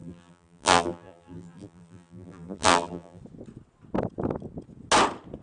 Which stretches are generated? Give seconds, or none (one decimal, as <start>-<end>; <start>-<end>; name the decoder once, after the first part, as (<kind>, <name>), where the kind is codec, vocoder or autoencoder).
0.0-3.2 (vocoder, BigVGAN v2)